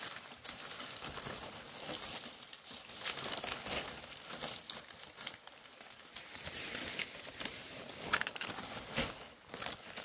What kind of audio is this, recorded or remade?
recorded